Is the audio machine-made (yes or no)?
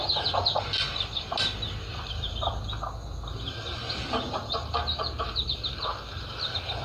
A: no